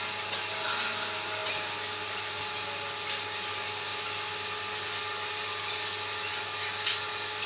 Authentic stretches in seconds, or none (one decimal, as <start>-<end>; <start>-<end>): 0.0-7.5